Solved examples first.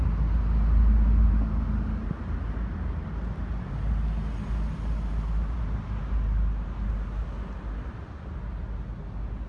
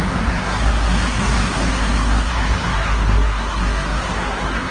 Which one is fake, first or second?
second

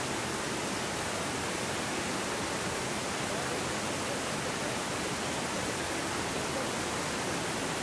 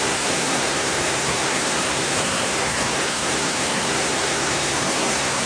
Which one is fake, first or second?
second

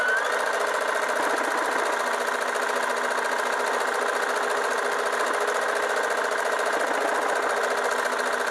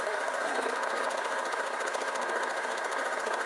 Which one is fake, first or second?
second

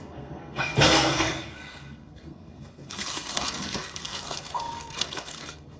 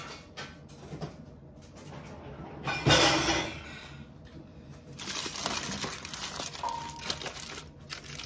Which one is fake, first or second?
first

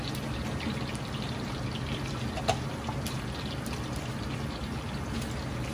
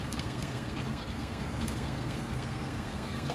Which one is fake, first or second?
second